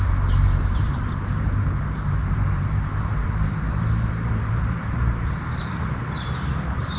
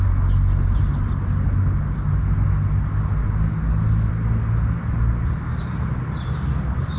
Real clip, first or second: second